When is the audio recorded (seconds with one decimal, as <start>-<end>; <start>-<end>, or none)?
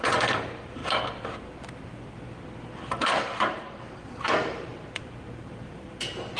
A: 0.8-3.1